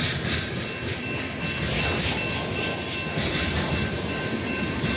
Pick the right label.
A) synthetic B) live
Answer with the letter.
B